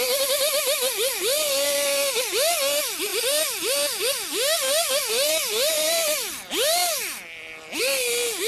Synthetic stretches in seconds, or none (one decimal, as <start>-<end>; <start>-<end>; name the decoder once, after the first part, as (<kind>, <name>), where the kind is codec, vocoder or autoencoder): none